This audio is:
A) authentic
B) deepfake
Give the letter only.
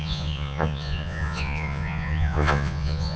B